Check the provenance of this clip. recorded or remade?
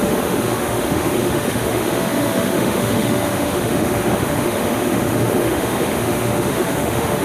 remade